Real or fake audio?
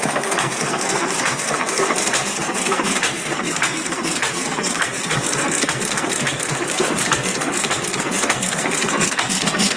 fake